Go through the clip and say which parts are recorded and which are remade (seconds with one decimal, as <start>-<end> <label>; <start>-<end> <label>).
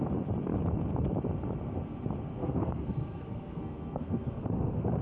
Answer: 0.0-2.4 recorded; 2.4-5.0 remade